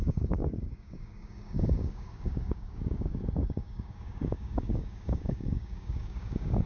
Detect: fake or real fake